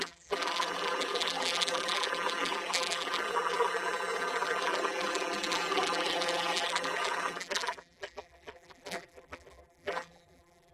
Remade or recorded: remade